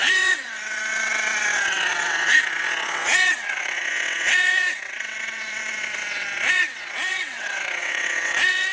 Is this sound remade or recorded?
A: remade